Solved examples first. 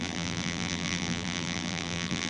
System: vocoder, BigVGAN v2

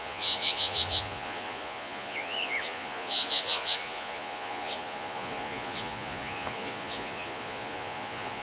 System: vocoder, Vocos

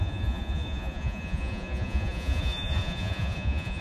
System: vocoder, Vocos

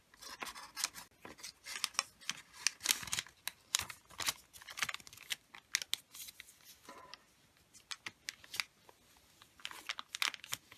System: none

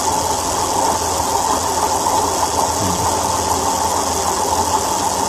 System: none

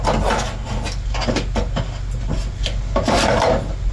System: none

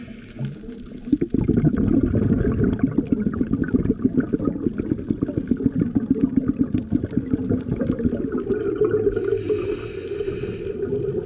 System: none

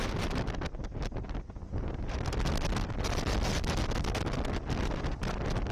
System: none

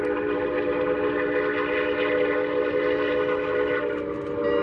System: none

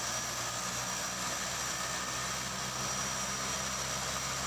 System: none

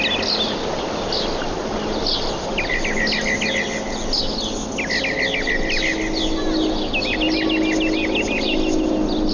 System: none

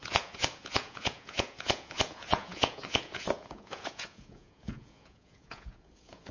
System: vocoder, Vocos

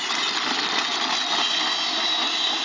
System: none